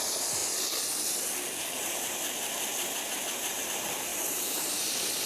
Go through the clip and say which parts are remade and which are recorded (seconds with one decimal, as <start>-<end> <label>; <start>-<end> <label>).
0.0-4.1 recorded; 4.1-5.3 remade